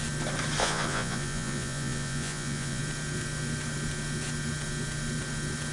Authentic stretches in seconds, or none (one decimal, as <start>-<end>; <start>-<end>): 0.0-0.6; 2.8-5.7